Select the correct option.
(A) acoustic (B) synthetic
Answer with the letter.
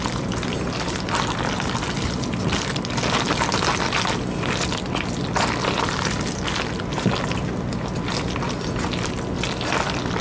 A